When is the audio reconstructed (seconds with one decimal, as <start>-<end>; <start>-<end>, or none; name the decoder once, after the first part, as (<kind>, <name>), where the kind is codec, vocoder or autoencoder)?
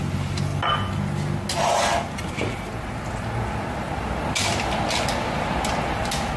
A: none